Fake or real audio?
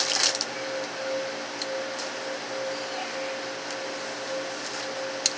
real